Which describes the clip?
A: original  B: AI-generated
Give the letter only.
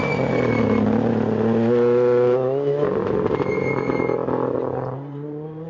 A